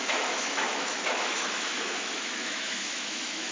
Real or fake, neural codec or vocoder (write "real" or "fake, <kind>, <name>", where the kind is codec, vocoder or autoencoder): fake, autoencoder, DAC-VAE